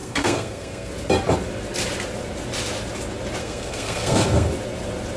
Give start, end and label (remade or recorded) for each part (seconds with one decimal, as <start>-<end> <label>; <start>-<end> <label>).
0.0-0.9 remade; 0.9-3.4 recorded; 3.4-4.5 remade; 4.5-5.2 recorded